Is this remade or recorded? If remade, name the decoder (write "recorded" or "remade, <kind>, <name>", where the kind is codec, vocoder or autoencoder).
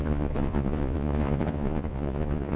remade, vocoder, Vocos